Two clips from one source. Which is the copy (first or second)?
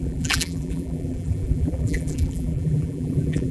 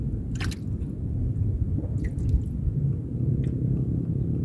first